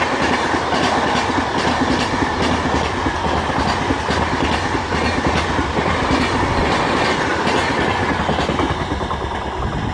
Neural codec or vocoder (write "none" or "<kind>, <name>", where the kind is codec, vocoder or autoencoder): none